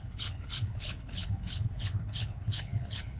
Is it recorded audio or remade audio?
remade